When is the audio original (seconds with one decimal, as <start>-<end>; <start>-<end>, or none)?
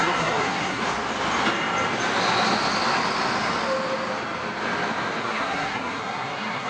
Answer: 0.8-5.2